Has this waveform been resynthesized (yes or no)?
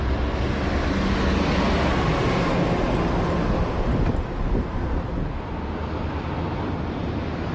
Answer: no